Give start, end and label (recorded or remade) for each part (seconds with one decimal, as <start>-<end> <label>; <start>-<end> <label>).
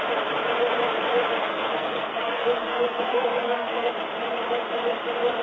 0.0-1.5 recorded; 1.5-3.9 remade; 3.9-5.4 recorded